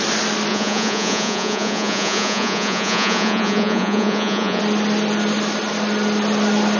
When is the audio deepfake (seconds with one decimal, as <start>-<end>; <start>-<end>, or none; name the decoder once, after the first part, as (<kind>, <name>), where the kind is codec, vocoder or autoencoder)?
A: 0.5-4.6 (vocoder, Vocos)